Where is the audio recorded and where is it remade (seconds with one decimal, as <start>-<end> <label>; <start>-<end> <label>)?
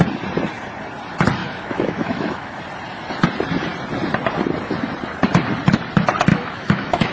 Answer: 0.0-1.4 recorded; 1.4-2.6 remade; 2.6-6.3 recorded; 6.3-7.1 remade